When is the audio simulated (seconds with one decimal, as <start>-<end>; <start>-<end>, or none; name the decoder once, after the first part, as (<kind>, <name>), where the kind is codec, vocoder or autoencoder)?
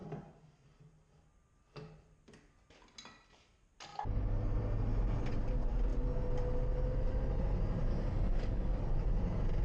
7.9-8.8 (codec, DAC)